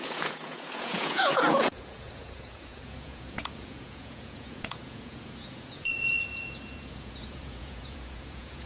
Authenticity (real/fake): fake